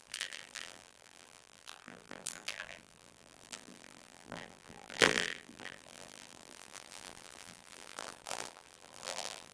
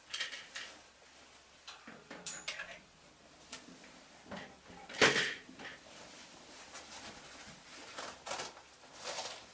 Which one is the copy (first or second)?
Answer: first